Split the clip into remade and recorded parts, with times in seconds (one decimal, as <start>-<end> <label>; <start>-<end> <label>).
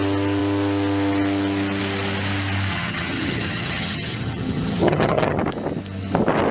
0.0-2.7 recorded; 2.7-5.4 remade; 5.4-6.5 recorded